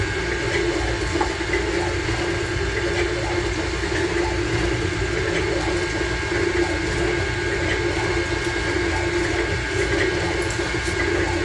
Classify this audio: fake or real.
real